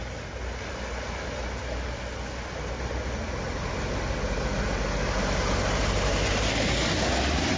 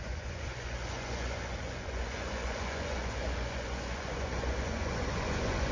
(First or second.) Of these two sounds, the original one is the first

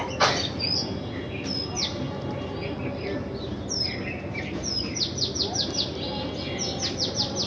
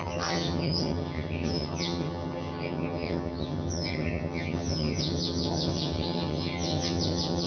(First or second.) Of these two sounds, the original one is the first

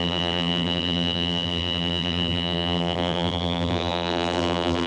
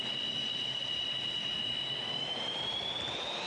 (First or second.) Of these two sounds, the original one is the second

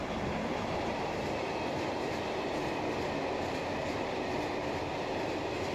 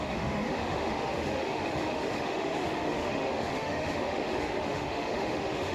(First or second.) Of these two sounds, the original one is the first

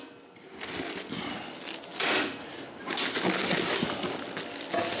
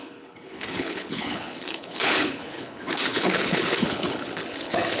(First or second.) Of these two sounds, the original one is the first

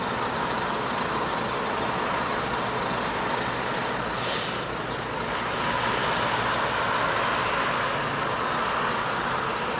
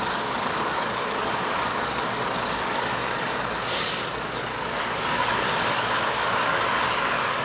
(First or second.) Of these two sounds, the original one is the first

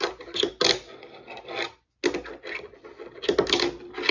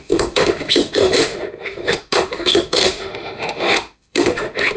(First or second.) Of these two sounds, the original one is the first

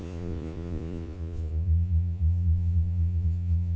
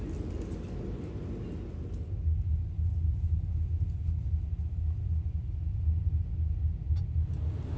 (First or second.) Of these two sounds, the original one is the second